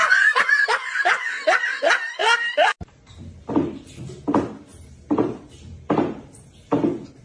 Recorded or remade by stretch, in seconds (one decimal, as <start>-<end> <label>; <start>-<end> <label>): 0.0-1.3 remade; 1.3-7.2 recorded